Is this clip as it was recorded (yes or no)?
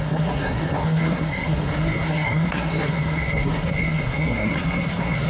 no